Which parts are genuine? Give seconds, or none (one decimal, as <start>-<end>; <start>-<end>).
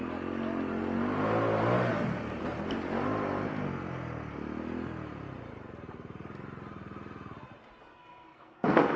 0.0-7.9